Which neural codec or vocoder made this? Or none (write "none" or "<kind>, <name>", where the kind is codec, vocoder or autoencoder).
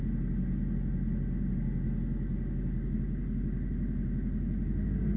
none